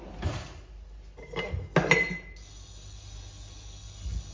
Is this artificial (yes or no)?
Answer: no